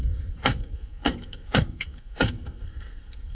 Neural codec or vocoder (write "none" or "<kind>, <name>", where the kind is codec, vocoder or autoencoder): codec, SNAC